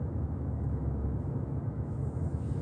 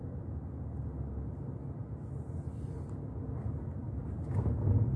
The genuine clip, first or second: second